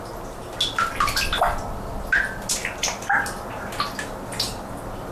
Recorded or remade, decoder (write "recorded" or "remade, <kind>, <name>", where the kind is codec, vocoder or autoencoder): recorded